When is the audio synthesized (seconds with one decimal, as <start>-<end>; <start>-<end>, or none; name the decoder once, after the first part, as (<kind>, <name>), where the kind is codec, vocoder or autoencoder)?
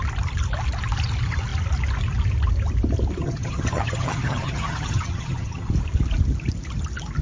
3.2-5.7 (vocoder, HiFi-GAN)